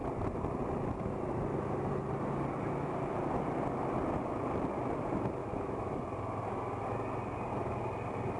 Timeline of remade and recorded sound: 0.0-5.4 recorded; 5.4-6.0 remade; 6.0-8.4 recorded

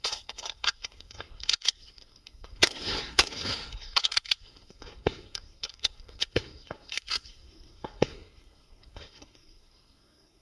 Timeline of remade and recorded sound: 0.0-10.4 remade

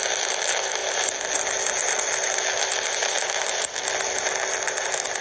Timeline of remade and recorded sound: 0.0-5.2 recorded